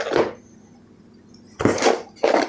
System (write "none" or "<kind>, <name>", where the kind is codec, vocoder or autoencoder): none